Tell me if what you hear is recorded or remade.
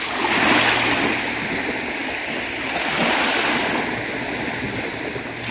recorded